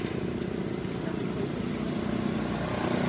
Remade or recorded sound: recorded